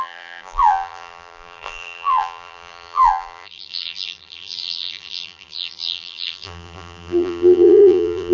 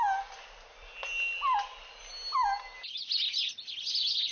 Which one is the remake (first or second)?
first